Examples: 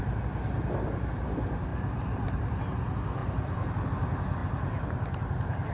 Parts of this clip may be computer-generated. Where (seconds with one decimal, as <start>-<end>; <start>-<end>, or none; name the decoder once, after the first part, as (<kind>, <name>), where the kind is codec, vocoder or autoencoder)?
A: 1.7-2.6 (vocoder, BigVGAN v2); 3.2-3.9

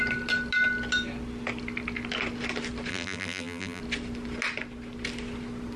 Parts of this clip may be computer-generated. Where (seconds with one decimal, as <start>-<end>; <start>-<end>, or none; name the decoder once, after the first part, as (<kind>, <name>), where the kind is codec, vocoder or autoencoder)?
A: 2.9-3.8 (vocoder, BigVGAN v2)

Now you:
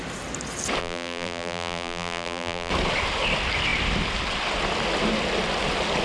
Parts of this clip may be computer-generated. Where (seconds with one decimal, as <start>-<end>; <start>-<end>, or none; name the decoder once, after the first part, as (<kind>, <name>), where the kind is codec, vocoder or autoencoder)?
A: 0.8-2.7 (vocoder, BigVGAN v2)

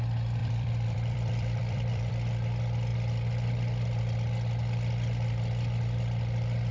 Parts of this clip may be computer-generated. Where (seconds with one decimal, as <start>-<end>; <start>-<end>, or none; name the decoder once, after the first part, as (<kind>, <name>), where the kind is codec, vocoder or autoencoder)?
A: 0.4-2.1 (vocoder, BigVGAN v2)